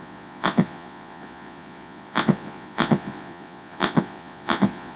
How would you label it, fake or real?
fake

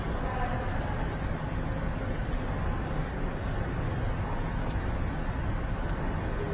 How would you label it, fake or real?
real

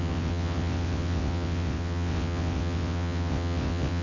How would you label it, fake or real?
fake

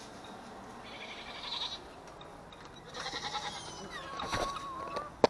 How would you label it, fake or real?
real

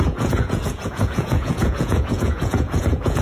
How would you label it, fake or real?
fake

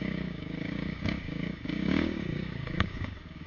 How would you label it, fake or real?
fake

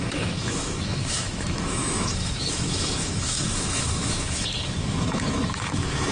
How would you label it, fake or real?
fake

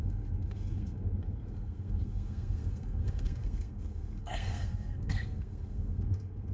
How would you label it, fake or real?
fake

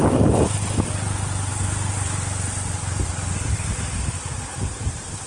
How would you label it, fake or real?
real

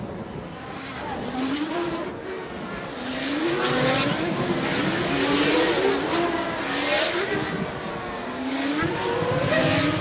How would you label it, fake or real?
real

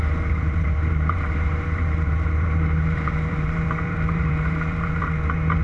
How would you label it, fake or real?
fake